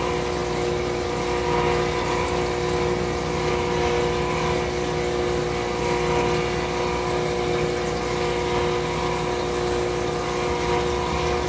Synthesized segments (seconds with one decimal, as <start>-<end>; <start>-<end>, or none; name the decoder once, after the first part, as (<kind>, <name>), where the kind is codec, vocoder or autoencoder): none